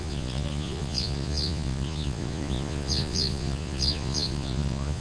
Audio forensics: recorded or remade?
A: remade